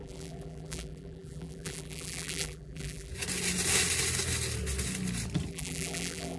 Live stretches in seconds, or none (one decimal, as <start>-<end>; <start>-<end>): 3.1-5.5